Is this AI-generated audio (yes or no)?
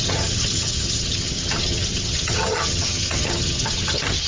yes